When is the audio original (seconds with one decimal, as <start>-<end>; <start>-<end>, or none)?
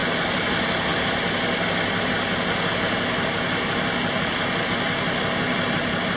0.0-6.2